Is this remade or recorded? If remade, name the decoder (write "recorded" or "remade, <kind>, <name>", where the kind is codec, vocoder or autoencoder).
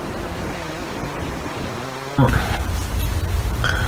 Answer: recorded